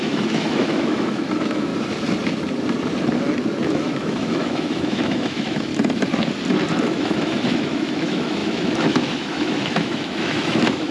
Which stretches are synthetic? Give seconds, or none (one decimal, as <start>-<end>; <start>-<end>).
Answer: 0.0-1.7; 3.7-5.7; 6.8-10.9